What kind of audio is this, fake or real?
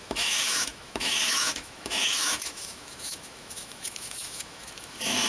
fake